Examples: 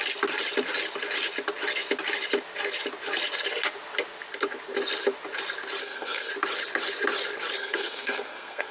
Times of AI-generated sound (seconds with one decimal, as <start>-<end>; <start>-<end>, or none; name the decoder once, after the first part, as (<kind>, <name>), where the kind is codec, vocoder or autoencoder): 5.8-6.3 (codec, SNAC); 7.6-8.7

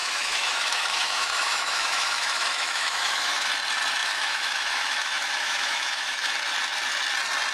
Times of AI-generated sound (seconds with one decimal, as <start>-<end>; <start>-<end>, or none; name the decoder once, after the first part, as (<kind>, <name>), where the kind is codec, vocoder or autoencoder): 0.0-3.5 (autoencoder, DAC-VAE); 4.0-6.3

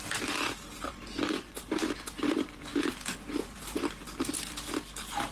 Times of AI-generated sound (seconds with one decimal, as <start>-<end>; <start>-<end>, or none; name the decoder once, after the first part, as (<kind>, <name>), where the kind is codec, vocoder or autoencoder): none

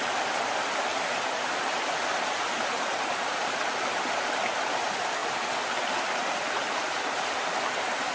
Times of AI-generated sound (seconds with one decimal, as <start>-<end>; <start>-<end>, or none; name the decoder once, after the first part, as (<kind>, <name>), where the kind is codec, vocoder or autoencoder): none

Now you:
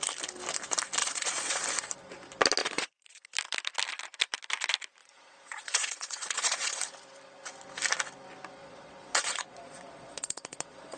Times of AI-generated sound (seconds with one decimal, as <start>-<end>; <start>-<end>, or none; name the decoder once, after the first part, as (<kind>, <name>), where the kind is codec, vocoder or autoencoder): 1.0-1.6 (vocoder, Vocos); 2.6-3.2; 5.0-6.8; 8.6-11.0

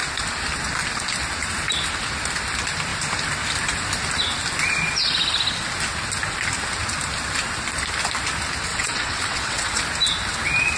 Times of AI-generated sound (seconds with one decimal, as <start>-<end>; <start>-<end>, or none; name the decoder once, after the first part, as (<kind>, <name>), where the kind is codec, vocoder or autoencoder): 8.7-9.8 (vocoder, WaveNeXt)

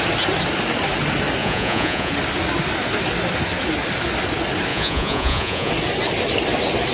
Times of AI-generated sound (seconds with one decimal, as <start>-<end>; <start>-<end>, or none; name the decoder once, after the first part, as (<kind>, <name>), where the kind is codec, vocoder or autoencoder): 1.4-2.1 (vocoder, Vocos); 4.7-5.7

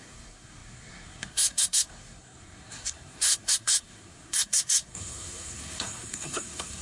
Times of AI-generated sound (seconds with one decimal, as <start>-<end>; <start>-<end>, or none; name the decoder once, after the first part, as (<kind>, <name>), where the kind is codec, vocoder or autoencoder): 0.0-6.8 (codec, SNAC)